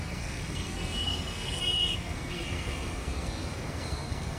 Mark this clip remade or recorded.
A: remade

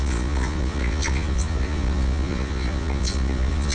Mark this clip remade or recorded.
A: remade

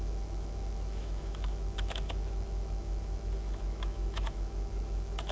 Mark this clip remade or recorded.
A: remade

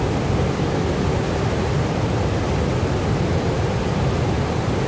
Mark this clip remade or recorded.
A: recorded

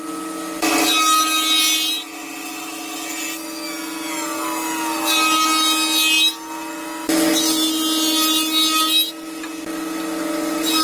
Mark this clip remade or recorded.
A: recorded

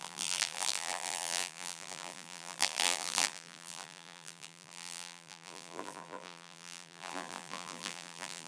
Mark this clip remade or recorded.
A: remade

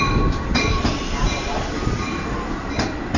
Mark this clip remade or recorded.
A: recorded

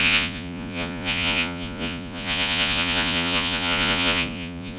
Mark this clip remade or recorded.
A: remade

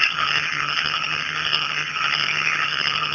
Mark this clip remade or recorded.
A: remade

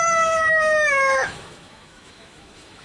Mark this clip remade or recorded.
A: remade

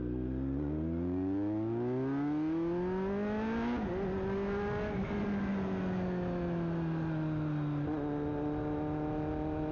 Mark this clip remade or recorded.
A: recorded